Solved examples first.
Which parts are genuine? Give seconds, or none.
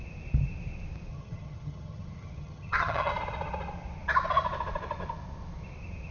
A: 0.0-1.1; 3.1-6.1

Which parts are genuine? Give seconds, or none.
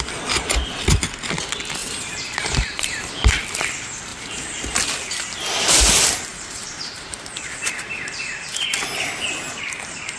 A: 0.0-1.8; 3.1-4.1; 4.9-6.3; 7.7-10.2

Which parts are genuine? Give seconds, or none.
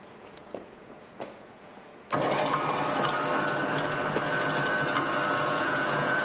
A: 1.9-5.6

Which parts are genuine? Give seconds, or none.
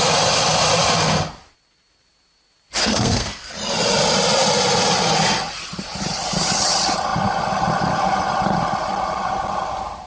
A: 0.0-2.8; 3.5-10.1